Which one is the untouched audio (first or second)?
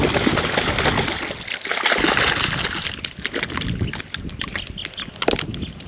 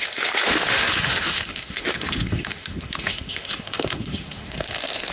first